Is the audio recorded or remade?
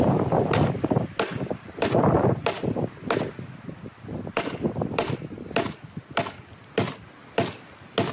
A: recorded